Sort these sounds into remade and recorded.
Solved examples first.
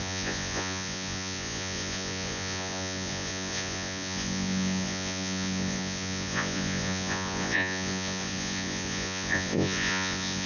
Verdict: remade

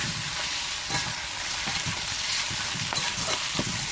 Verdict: recorded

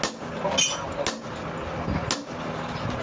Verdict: recorded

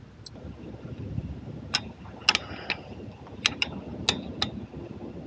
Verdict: recorded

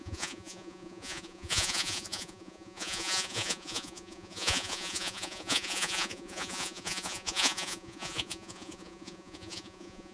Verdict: remade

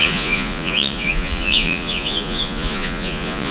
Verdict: remade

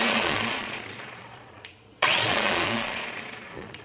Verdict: remade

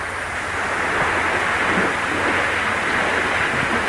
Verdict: recorded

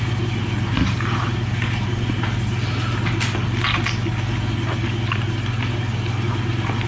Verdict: recorded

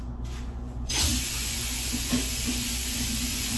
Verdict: remade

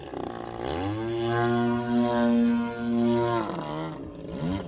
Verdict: recorded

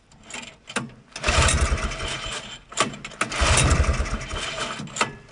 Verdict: recorded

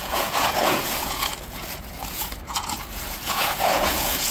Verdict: remade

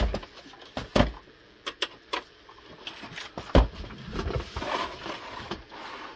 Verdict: recorded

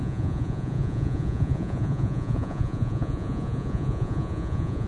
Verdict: remade